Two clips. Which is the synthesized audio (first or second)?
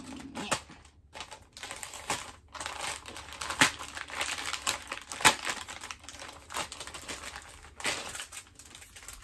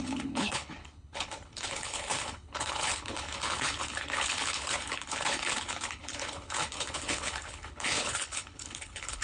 second